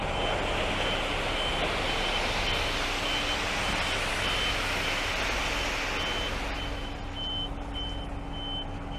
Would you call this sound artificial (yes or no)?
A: no